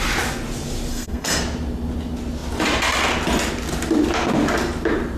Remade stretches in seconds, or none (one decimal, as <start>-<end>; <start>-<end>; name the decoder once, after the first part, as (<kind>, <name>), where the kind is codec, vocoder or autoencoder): 0.9-1.4 (codec, SNAC)